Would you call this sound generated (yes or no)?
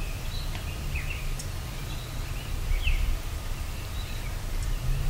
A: yes